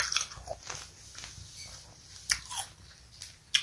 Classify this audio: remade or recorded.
recorded